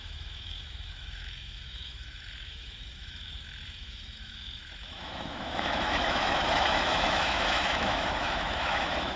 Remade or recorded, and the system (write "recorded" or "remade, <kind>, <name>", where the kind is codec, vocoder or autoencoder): remade, autoencoder, DAC-VAE